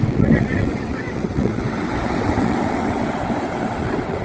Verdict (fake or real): fake